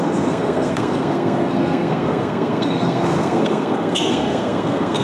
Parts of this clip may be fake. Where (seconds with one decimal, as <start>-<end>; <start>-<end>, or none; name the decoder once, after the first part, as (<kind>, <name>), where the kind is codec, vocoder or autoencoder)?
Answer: 0.0-5.0 (codec, SNAC)